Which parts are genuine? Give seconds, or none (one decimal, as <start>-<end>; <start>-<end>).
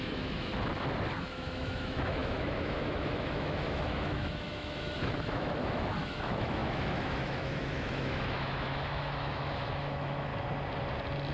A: 0.5-1.2; 10.3-11.3